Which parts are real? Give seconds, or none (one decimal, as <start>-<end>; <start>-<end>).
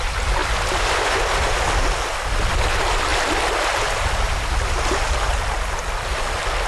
0.0-6.7